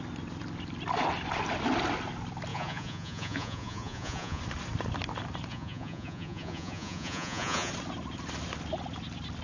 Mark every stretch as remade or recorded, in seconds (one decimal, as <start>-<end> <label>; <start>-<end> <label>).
0.0-2.5 recorded; 2.5-4.4 remade; 4.4-5.5 recorded; 5.5-7.7 remade; 7.7-9.4 recorded